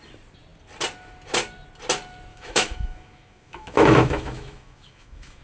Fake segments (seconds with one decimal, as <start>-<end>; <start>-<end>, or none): 2.3-5.4